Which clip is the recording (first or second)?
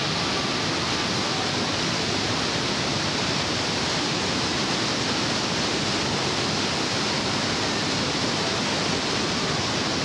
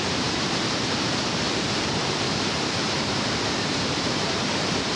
first